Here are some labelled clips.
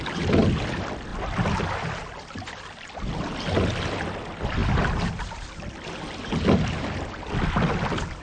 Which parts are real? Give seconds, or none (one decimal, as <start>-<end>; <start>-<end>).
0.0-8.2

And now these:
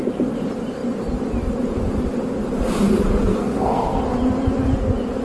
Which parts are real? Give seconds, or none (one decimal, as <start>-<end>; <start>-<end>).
0.0-3.3; 4.0-5.2

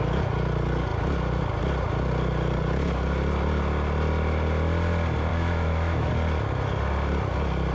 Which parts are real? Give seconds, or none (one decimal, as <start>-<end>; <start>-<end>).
0.0-5.3; 6.1-7.7